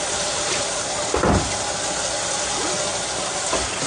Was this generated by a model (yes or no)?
no